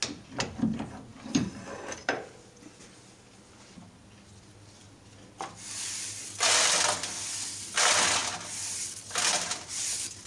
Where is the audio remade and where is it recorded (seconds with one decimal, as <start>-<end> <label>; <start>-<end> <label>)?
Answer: 0.0-1.1 recorded; 1.1-2.6 remade; 2.6-10.3 recorded